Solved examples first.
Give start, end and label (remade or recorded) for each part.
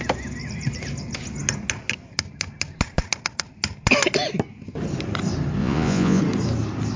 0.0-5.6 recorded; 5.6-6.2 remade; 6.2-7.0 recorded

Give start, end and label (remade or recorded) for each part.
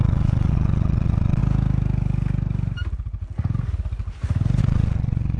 0.0-1.4 remade; 1.4-4.6 recorded; 4.6-5.4 remade